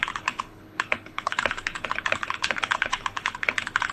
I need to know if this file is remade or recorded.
remade